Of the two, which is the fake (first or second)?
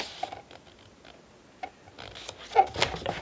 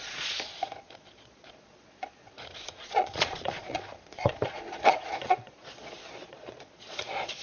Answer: second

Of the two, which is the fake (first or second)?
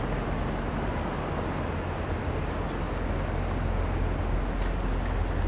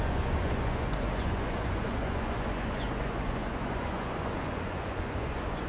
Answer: second